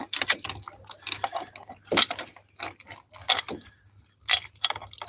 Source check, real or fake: real